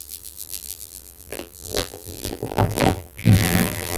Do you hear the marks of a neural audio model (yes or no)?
yes